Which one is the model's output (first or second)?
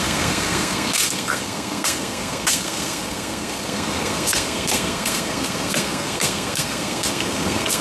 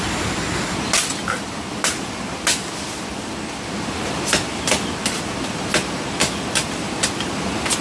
first